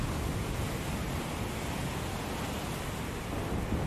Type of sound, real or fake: real